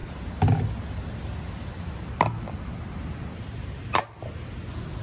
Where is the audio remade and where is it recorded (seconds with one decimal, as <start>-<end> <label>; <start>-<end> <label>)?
0.0-3.0 remade; 3.0-5.0 recorded